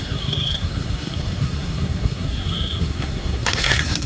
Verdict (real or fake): fake